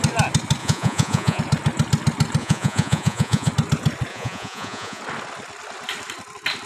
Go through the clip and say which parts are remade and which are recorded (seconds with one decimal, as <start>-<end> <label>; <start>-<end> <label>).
0.0-0.6 recorded; 0.6-1.4 remade; 1.4-2.4 recorded; 2.4-3.5 remade; 3.5-4.1 recorded; 4.1-5.0 remade; 5.0-6.7 recorded